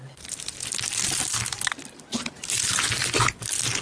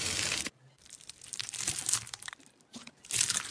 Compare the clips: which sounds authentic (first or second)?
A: first